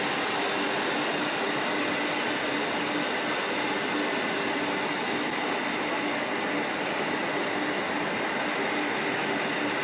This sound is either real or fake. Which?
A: real